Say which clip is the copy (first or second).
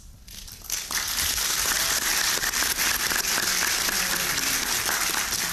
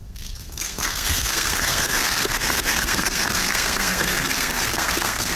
second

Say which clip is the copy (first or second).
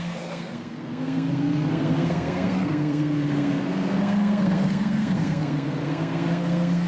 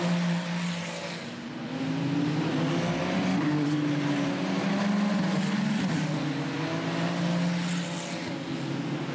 first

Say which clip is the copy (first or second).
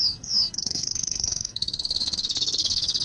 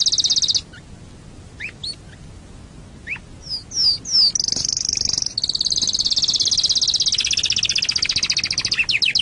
first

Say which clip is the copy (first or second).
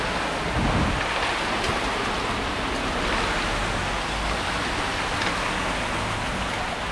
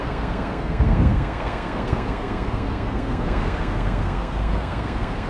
second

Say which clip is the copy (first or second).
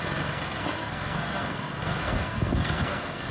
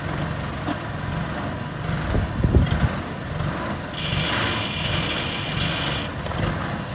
first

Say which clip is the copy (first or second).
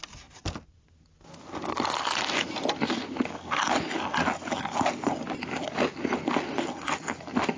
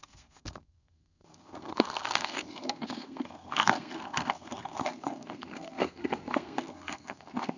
second